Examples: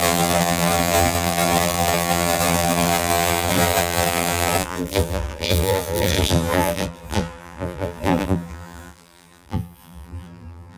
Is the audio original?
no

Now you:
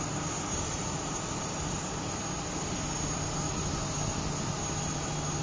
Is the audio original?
yes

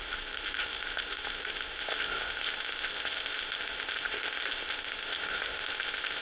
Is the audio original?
no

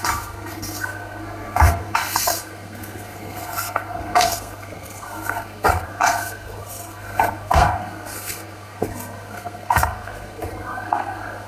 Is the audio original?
no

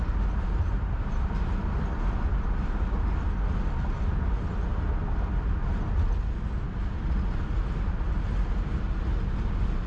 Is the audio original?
yes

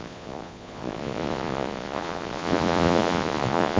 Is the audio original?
no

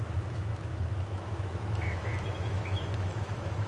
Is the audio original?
no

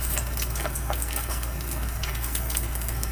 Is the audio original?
no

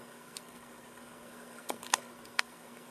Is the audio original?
no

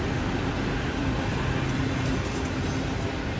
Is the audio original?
yes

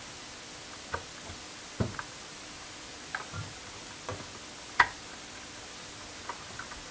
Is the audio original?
yes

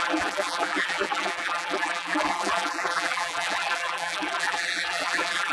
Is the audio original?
no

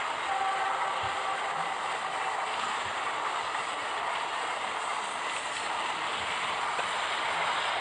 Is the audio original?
no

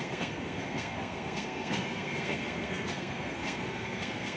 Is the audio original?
no